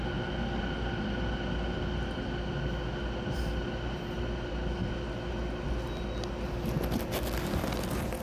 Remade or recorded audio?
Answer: recorded